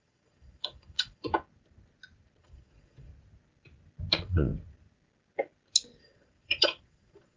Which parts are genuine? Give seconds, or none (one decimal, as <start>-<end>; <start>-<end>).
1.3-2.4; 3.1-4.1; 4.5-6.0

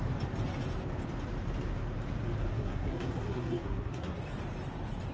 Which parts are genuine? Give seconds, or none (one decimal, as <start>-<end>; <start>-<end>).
0.0-2.5; 4.2-5.1

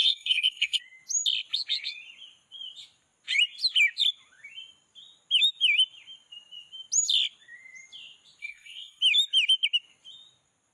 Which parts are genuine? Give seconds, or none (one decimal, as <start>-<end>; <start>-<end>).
0.8-8.4; 9.0-10.7